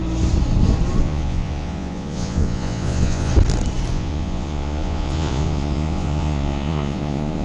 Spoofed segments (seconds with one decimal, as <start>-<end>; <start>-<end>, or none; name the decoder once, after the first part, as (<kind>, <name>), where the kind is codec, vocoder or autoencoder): 1.0-3.3 (vocoder, Vocos); 3.9-7.4